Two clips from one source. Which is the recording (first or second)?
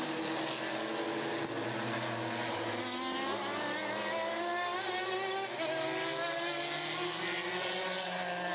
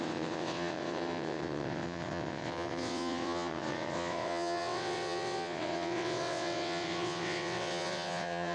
first